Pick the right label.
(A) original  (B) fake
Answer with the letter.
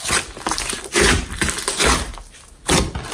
A